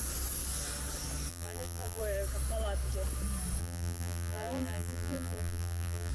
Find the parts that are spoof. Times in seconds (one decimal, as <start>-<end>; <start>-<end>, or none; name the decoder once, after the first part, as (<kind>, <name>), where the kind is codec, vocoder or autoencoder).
1.3-2.0 (vocoder, BigVGAN v2); 3.6-6.1